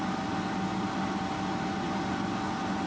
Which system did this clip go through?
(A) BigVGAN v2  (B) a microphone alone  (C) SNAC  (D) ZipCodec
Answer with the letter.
B